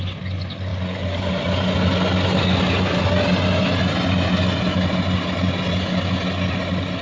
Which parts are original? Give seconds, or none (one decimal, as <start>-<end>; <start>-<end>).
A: 0.0-7.0